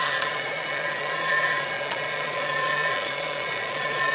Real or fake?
fake